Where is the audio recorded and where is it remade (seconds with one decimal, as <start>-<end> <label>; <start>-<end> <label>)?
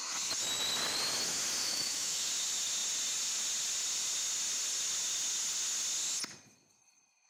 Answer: 0.0-1.6 recorded; 1.6-2.3 remade; 2.3-7.3 recorded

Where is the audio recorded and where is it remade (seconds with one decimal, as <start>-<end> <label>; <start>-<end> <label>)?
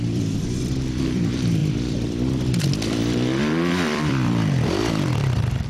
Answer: 0.0-5.7 remade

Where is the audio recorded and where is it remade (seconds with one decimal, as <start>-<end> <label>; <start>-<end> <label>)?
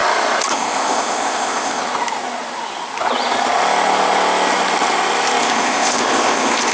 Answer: 0.0-0.5 recorded; 0.5-1.8 remade; 1.8-5.4 recorded; 5.4-6.7 remade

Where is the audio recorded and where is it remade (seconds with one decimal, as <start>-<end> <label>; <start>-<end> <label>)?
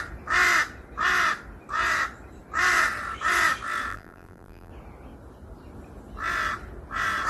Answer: 0.0-3.9 recorded; 3.9-4.7 remade; 4.7-7.3 recorded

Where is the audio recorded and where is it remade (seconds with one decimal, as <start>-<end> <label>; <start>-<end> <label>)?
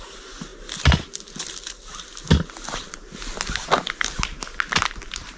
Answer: 0.0-5.4 recorded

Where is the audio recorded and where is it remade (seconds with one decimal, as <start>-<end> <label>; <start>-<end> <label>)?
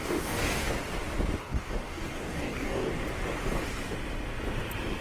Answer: 0.0-0.7 remade; 0.7-1.4 recorded; 1.4-2.9 remade; 2.9-5.0 recorded